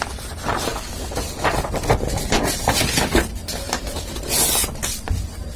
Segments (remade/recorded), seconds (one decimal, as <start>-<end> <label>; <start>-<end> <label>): 0.0-5.6 recorded